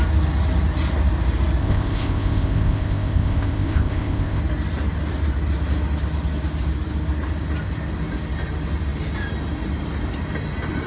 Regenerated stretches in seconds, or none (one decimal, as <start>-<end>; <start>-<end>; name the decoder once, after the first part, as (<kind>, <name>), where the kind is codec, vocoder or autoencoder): 1.6-4.4 (codec, ZipCodec)